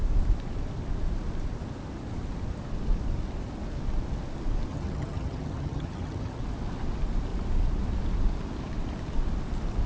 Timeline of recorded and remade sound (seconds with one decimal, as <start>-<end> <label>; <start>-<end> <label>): 0.0-4.7 recorded; 4.7-6.4 remade; 6.4-9.9 recorded